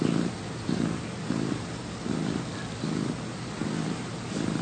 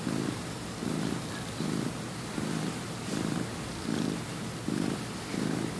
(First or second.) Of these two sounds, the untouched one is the first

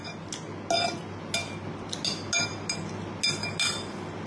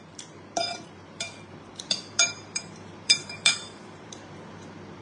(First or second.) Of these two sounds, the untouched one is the first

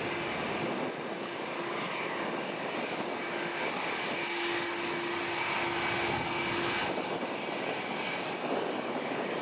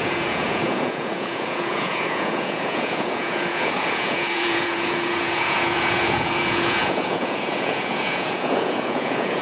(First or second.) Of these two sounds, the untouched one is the first